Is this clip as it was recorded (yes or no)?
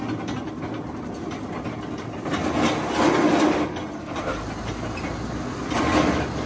yes